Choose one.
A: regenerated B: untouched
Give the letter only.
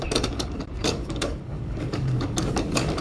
A